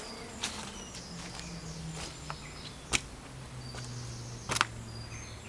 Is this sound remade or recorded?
recorded